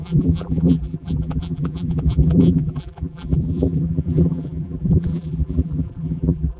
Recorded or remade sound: remade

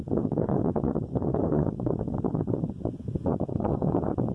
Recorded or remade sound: remade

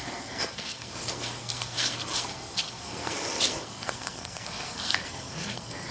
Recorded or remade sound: remade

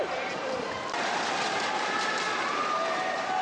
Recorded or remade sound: remade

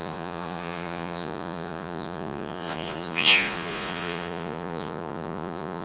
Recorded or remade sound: remade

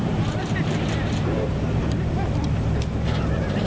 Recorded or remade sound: remade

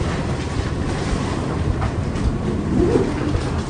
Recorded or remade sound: recorded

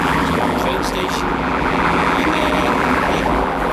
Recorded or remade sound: remade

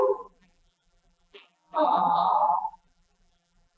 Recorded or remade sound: remade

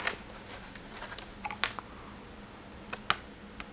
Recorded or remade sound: recorded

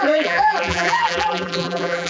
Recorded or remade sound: remade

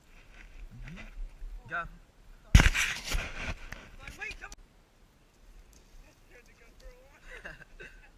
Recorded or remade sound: recorded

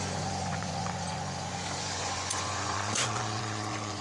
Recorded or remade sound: remade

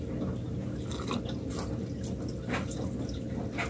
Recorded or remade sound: recorded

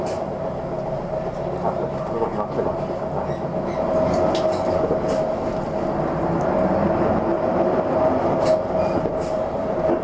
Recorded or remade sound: recorded